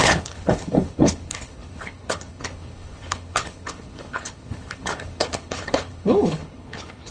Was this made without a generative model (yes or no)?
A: no